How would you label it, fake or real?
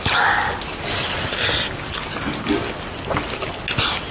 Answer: real